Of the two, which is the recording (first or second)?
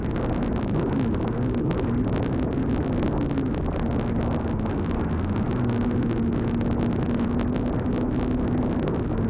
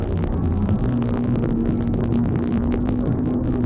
first